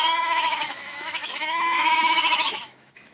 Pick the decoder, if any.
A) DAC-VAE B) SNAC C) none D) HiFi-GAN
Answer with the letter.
A